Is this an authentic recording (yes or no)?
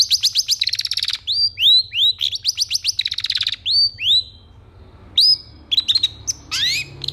yes